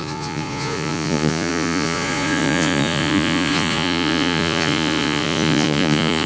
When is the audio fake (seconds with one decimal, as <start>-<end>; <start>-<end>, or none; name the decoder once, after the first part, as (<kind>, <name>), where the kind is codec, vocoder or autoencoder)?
0.0-6.3 (vocoder, Vocos)

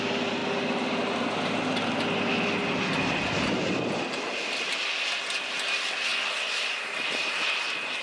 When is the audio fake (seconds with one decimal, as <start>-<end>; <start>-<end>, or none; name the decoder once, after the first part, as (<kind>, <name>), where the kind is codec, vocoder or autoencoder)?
none

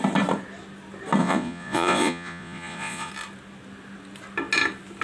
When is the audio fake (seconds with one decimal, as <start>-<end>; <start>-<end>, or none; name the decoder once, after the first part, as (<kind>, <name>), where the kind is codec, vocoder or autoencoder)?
1.2-3.1 (vocoder, Vocos)

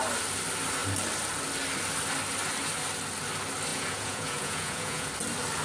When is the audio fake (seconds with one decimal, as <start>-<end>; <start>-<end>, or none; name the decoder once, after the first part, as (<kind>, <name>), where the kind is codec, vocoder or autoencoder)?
3.7-5.1 (vocoder, Vocos)

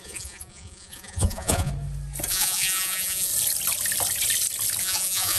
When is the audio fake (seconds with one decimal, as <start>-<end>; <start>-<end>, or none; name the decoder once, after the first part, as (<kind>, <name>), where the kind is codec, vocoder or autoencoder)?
0.0-1.7 (vocoder, Vocos); 2.3-3.3; 4.8-5.4

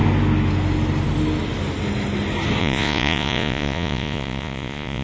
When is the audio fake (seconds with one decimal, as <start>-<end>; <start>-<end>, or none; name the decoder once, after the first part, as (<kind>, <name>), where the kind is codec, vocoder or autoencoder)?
2.6-5.0 (vocoder, Vocos)

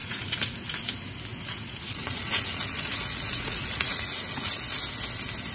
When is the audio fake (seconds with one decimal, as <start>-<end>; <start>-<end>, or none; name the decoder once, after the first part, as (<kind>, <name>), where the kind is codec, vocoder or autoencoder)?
0.0-0.8 (vocoder, Vocos); 1.3-4.6

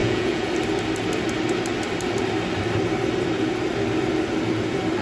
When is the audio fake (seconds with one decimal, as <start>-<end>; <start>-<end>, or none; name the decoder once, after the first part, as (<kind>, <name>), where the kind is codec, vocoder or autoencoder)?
0.0-0.5 (vocoder, Vocos)